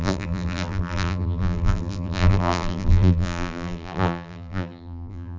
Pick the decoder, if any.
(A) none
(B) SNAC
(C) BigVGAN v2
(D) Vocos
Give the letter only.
C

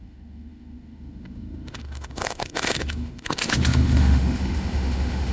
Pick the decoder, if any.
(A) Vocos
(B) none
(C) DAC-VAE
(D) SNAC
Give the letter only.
C